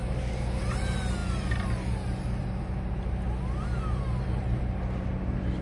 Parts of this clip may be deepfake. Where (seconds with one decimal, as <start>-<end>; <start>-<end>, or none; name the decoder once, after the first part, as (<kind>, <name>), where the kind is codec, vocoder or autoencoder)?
0.0-0.6 (codec, DAC)